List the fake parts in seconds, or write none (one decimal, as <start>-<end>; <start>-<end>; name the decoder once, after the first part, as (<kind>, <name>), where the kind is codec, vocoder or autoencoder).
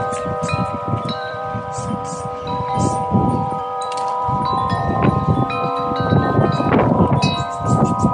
0.6-4.4 (vocoder, BigVGAN v2)